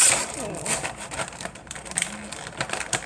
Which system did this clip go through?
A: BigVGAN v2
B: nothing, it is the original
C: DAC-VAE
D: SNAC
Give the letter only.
A